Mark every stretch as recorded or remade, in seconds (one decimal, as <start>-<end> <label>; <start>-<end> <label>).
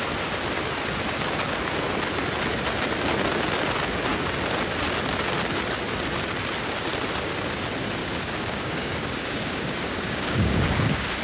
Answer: 0.0-8.0 recorded; 8.0-11.2 remade